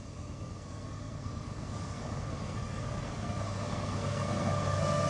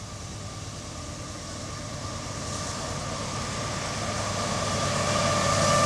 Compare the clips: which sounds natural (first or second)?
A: second